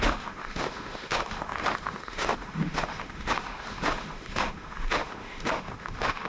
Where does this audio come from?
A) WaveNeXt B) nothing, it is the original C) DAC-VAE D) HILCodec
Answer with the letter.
C